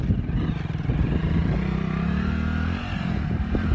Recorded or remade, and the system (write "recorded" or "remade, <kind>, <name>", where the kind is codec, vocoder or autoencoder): recorded